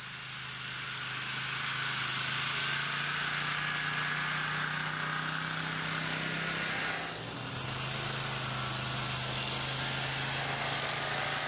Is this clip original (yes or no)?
yes